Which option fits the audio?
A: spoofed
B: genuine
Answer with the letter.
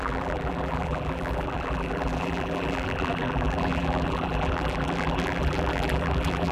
A